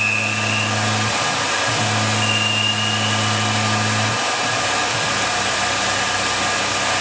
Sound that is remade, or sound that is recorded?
recorded